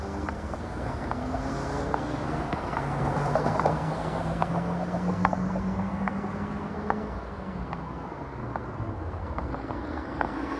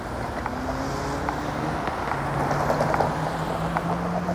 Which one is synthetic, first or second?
first